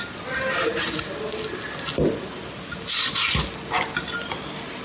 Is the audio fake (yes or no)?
no